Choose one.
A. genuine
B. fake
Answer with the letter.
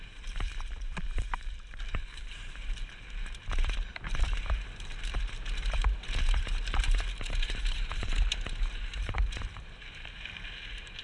B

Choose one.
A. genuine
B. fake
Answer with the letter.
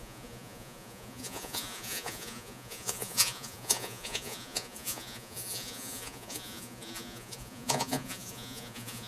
B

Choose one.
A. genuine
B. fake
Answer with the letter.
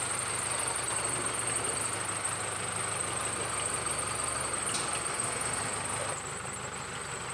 A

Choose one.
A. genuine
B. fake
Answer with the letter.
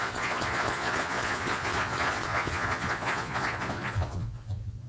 B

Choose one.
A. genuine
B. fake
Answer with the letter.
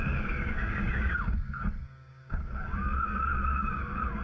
B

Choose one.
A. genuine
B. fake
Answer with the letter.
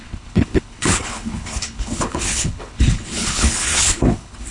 B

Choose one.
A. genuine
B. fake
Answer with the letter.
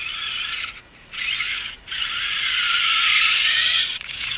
B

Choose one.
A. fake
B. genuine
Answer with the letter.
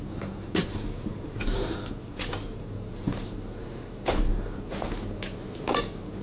B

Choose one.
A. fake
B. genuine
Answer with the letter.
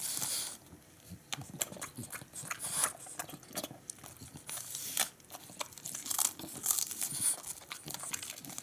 B